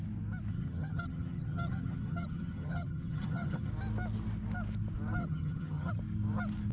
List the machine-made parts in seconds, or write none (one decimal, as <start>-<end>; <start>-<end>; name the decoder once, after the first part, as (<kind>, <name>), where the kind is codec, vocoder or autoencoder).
0.5-3.7 (vocoder, HiFi-GAN); 5.2-5.9